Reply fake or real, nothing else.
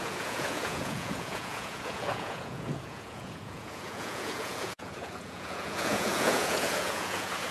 fake